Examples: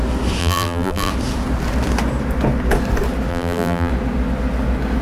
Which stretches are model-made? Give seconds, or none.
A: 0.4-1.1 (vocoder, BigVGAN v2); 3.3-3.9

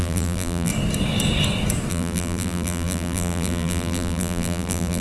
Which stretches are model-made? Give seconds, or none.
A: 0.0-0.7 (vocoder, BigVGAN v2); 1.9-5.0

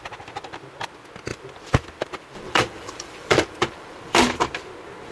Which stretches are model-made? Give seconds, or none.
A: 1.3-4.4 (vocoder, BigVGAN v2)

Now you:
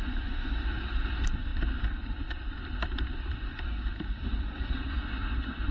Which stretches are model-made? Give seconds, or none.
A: 1.5-4.9 (vocoder, BigVGAN v2)

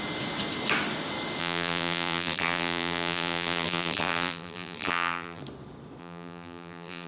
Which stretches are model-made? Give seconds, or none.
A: 1.4-5.4 (vocoder, BigVGAN v2); 6.0-7.1